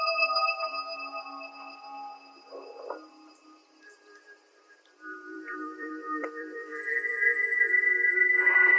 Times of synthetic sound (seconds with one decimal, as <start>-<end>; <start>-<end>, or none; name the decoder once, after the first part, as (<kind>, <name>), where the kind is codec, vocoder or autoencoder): 0.0-0.7 (vocoder, BigVGAN v2); 3.1-8.8